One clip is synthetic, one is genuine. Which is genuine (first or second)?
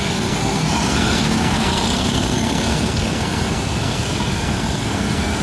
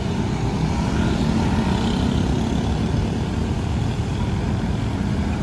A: second